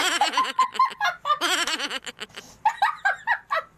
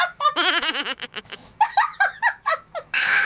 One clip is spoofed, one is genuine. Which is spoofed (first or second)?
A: second